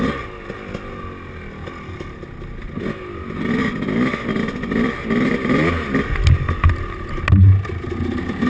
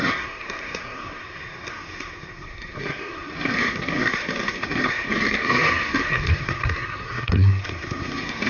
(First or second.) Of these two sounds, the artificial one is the second